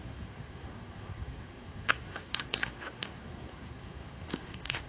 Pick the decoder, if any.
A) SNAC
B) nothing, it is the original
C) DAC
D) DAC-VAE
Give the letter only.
A